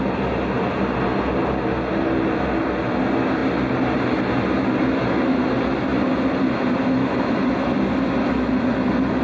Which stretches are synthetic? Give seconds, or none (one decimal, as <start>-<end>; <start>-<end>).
none